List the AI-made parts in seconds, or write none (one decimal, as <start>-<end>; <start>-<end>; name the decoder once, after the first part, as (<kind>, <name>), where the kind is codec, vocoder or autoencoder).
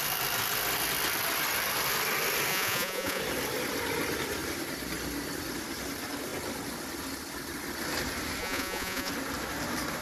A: 2.5-3.2 (vocoder, Vocos); 8.4-9.1